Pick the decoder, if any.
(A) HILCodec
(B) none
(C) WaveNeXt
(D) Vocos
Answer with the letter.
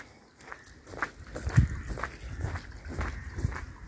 B